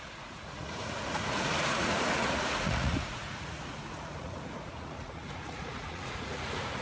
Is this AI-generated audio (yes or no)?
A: yes